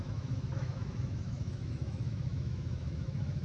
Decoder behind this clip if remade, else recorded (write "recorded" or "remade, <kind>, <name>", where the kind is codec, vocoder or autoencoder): remade, autoencoder, DAC-VAE